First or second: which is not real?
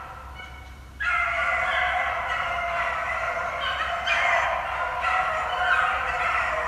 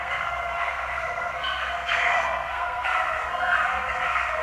second